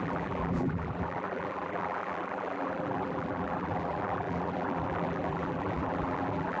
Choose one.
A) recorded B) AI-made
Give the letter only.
B